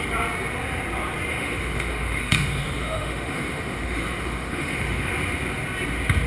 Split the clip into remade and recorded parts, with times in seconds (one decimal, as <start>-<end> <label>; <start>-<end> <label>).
0.0-1.3 recorded; 1.3-5.1 remade; 5.1-6.3 recorded